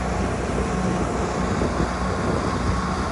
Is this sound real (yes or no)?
yes